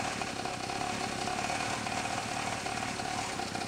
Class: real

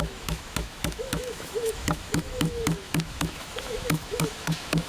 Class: fake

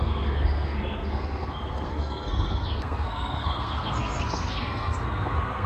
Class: fake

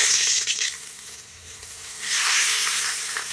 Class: fake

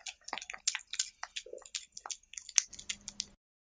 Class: real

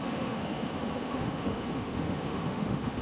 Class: fake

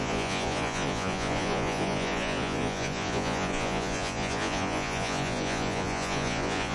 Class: fake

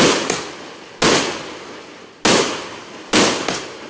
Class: real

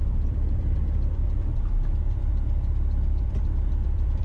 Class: fake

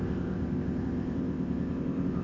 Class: fake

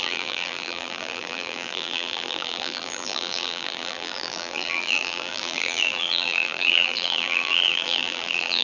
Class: fake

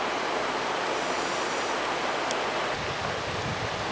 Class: real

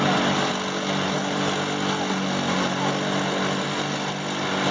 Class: real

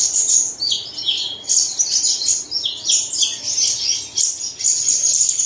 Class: real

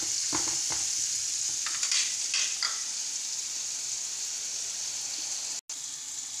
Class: real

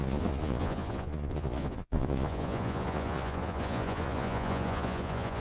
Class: fake